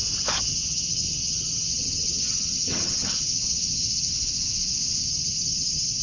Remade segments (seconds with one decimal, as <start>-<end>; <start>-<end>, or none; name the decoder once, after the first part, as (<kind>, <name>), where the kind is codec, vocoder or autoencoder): 0.5-4.1 (vocoder, HiFi-GAN); 5.0-6.0

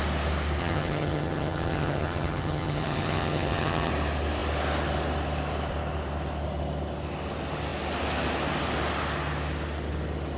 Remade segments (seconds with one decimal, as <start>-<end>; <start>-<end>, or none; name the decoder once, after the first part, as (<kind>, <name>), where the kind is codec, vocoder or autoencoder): 0.6-3.9 (vocoder, HiFi-GAN)

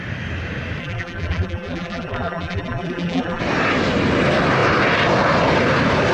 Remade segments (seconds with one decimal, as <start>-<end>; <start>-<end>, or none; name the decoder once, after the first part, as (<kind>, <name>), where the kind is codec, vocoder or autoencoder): 0.8-3.4 (vocoder, BigVGAN v2)

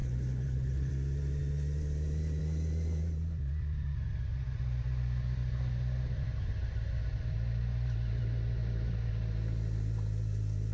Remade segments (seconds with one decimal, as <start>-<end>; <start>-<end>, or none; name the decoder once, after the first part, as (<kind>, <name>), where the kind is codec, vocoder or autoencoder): 0.0-0.9 (codec, HILCodec)

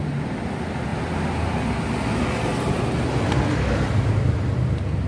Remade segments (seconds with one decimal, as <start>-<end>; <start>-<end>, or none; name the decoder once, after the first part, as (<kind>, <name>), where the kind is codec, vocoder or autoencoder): none

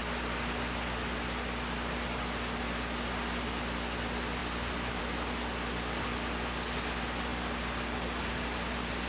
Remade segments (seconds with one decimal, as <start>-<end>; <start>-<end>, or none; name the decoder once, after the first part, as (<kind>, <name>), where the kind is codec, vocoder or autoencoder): none